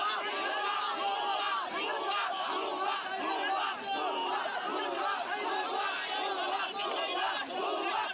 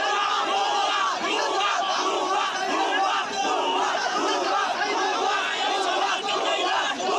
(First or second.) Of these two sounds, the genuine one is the first